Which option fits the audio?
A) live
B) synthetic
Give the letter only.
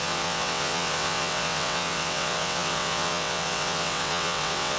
B